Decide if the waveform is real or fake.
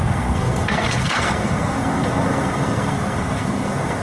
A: fake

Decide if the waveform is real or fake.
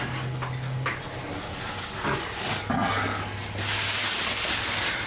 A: real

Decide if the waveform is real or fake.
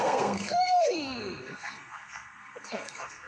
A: fake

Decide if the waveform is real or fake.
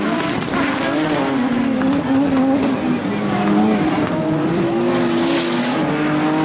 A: real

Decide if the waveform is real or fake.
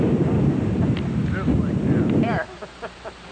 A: real